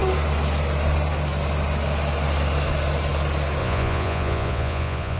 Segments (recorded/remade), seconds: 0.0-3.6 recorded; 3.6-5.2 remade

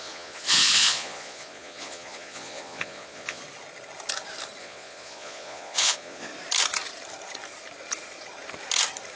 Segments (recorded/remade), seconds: 0.0-3.4 remade; 3.4-4.6 recorded; 4.6-6.3 remade; 6.3-9.2 recorded

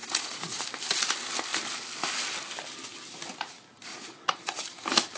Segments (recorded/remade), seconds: 0.0-0.6 remade; 0.6-3.9 recorded; 3.9-4.8 remade; 4.8-5.2 recorded

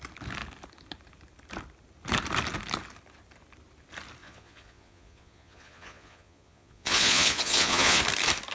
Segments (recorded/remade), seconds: 0.0-4.2 recorded; 4.2-8.0 remade; 8.0-8.5 recorded

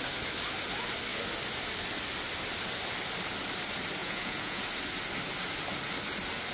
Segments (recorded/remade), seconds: 0.0-4.0 recorded; 4.0-4.6 remade; 4.6-6.5 recorded

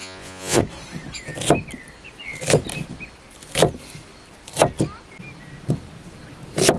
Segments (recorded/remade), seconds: 0.0-0.6 remade; 0.6-6.8 recorded